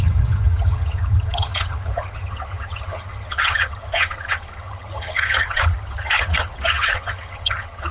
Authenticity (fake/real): fake